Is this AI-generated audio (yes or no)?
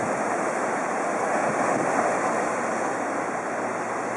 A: no